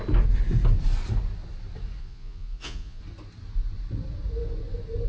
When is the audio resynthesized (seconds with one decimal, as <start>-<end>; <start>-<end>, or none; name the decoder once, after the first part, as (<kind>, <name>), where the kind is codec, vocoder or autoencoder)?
2.0-3.0 (vocoder, Vocos)

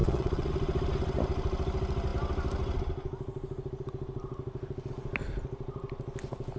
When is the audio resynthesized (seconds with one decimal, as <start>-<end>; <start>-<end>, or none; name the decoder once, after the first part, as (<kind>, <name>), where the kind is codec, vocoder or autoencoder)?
0.0-0.5 (vocoder, Vocos)

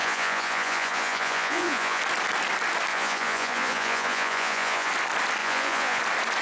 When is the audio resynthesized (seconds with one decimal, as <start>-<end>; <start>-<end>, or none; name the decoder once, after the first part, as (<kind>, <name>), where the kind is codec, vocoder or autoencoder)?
0.0-2.0 (vocoder, Vocos); 2.9-4.9; 5.4-6.0